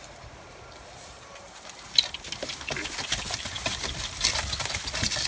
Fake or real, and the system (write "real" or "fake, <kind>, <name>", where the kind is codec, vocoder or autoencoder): real